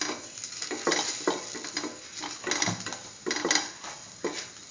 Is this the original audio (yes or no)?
yes